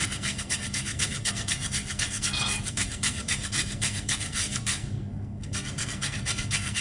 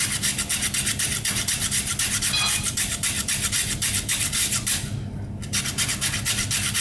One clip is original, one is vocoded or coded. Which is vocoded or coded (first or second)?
first